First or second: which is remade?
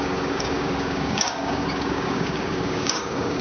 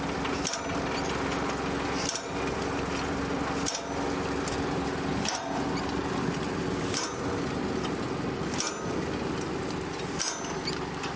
first